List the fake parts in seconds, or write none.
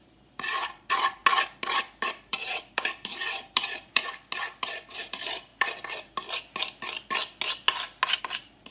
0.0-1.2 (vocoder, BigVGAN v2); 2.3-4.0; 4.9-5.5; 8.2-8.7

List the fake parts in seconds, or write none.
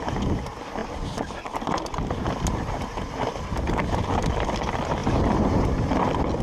none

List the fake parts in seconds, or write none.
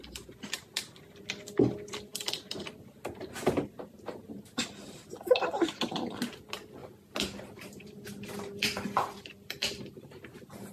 2.1-3.0 (vocoder, BigVGAN v2); 6.8-9.8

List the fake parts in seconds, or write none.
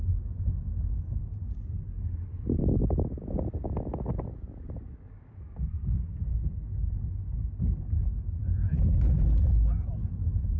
7.3-7.8 (vocoder, BigVGAN v2)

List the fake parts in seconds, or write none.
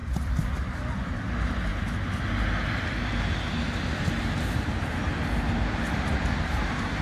0.0-1.7 (vocoder, BigVGAN v2); 3.9-5.1; 6.3-7.0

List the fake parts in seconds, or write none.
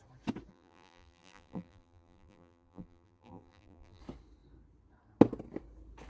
0.5-4.0 (vocoder, BigVGAN v2)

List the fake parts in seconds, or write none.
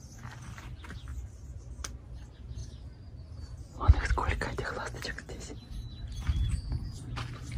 1.1-1.7 (vocoder, BigVGAN v2)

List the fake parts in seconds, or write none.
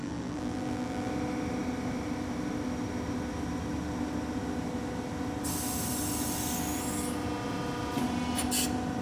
0.0-1.1 (vocoder, BigVGAN v2)